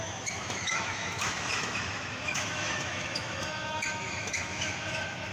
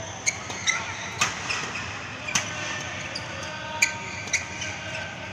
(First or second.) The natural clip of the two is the second